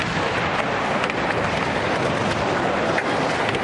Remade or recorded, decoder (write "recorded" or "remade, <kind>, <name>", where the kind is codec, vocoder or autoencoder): recorded